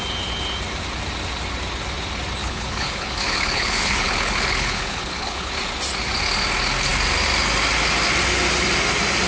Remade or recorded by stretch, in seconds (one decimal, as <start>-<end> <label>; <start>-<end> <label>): 0.0-2.4 recorded; 2.4-5.5 remade; 5.5-9.3 recorded